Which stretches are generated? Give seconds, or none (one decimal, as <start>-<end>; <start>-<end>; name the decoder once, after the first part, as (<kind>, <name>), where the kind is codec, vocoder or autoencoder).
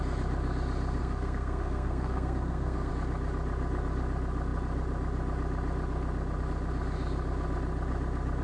1.0-2.9 (codec, SNAC)